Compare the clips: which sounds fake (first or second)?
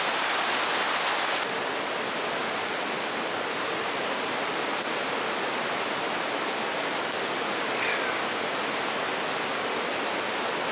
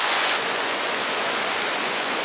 second